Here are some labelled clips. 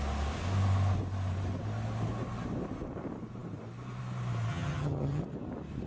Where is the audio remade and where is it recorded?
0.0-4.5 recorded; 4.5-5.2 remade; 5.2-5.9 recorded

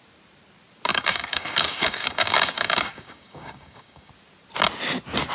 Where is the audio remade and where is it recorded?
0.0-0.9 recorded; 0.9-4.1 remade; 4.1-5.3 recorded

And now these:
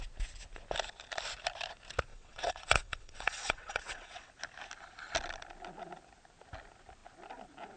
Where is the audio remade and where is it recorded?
0.0-2.1 recorded; 2.1-4.3 remade; 4.3-7.8 recorded

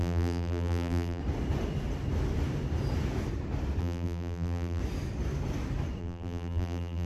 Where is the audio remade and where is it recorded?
0.0-1.2 remade; 1.2-3.8 recorded; 3.8-4.8 remade; 4.8-6.0 recorded; 6.0-7.1 remade

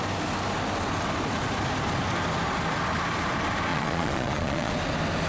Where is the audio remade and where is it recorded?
0.0-3.7 recorded; 3.7-4.7 remade; 4.7-5.3 recorded

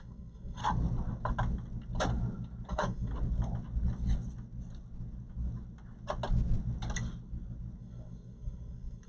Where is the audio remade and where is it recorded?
0.0-0.6 remade; 0.6-2.7 recorded; 2.7-3.1 remade; 3.1-7.8 recorded; 7.8-9.1 remade